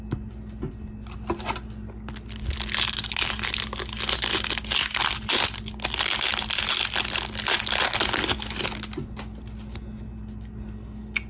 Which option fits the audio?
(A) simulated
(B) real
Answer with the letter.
B